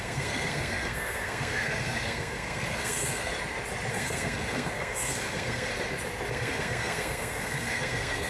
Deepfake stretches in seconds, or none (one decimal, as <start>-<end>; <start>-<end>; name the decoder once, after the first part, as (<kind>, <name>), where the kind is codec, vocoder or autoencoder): 0.0-3.3 (codec, SNAC); 3.9-5.7; 6.3-8.3